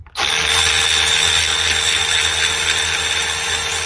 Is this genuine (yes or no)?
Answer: yes